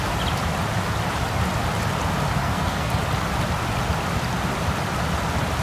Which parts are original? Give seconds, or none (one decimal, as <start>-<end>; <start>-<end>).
0.0-2.4; 2.9-5.6